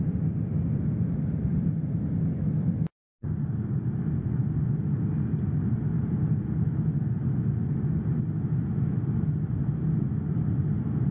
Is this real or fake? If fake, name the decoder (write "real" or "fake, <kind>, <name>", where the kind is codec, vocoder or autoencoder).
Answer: real